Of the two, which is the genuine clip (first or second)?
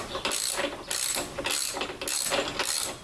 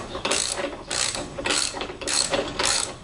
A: first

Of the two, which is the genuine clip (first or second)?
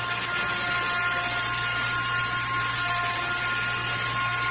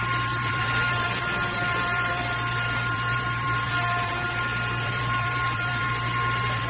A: first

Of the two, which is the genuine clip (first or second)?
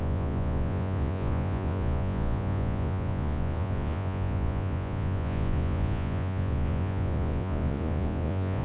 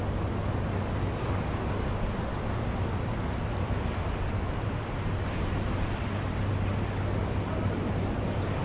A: second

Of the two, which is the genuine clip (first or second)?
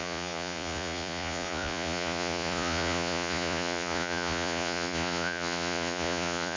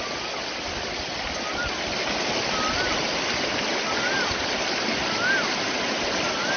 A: second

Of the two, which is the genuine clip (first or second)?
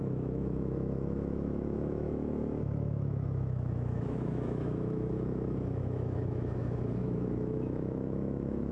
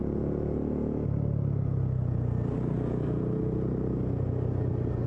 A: second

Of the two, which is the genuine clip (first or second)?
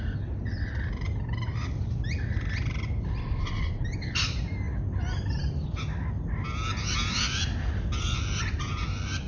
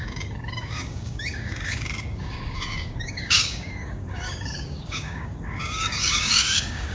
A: first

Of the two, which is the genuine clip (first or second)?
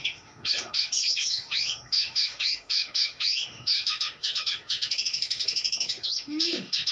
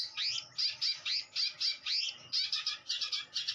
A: second